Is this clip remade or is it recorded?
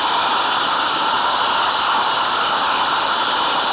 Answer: recorded